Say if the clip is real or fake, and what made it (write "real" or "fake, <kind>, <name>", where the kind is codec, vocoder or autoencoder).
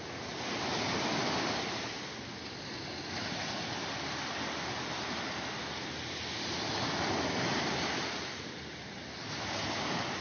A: real